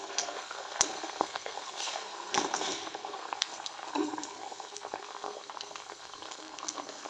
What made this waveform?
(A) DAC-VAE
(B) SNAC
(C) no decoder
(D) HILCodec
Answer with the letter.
B